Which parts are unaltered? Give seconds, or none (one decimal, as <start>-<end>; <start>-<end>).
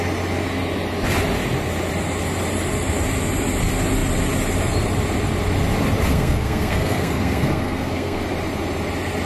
0.0-6.1; 8.2-9.3